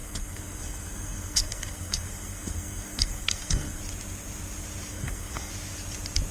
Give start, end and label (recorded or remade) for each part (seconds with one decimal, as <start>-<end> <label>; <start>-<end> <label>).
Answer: 0.0-3.8 remade; 3.8-4.9 recorded; 4.9-5.5 remade; 5.5-6.3 recorded